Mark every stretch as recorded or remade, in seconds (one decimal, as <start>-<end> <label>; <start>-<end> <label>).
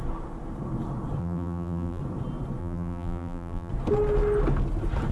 0.0-1.2 recorded; 1.2-2.0 remade; 2.0-2.6 recorded; 2.6-3.7 remade; 3.7-5.1 recorded